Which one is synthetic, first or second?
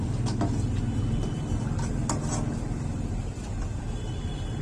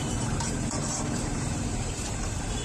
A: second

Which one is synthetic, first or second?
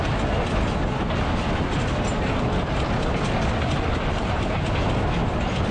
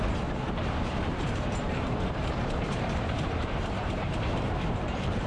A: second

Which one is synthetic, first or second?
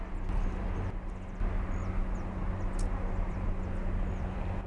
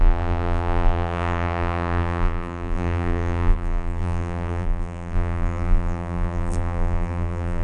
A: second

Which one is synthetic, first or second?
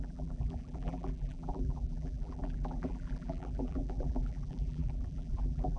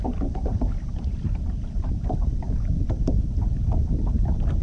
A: first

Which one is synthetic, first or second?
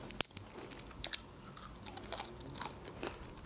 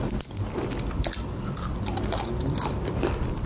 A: second